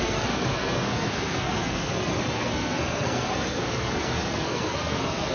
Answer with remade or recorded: remade